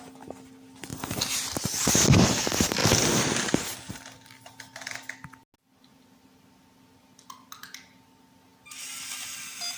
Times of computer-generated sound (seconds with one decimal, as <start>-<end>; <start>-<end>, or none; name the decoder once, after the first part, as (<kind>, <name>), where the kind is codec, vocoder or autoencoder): 0.9-2.4 (vocoder, BigVGAN v2)